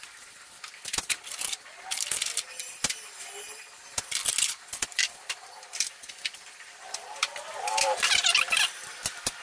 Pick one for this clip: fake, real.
fake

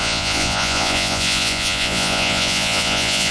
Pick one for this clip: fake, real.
fake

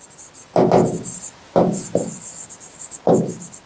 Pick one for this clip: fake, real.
real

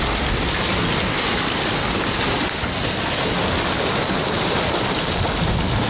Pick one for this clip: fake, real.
real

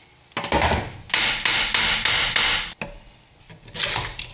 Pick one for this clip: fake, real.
real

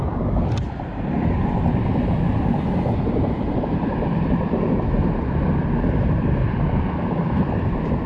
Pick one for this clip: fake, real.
real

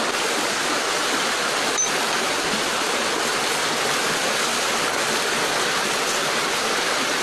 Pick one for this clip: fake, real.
real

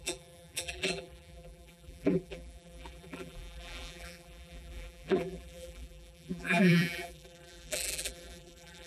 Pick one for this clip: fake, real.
fake